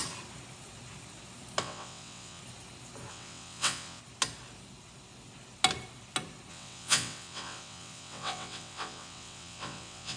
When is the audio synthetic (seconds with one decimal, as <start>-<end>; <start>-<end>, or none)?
1.6-2.4; 3.1-4.0; 6.5-10.2